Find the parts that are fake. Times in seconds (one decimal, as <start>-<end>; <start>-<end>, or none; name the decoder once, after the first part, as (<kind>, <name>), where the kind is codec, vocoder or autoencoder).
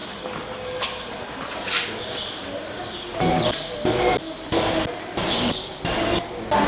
5.2-5.8 (codec, DAC)